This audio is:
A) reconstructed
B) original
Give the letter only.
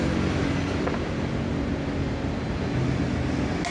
B